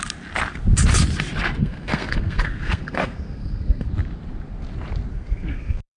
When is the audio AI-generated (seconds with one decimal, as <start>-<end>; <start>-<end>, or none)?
1.6-3.9; 5.1-6.0